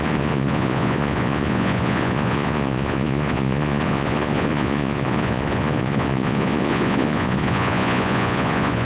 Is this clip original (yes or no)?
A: no